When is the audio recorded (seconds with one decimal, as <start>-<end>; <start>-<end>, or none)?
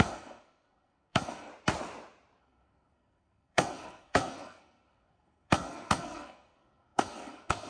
1.5-2.4